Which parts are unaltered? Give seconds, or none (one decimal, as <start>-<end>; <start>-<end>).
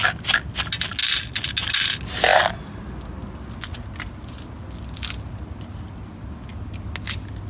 0.0-7.5